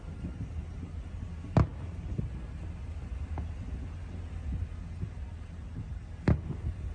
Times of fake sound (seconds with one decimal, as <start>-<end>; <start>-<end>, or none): none